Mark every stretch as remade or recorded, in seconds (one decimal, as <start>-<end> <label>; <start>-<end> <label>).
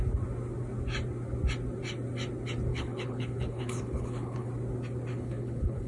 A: 0.0-2.7 recorded; 2.7-4.5 remade; 4.5-5.1 recorded; 5.1-5.9 remade